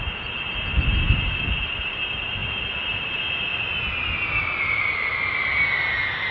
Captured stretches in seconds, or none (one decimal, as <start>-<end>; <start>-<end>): 0.0-6.3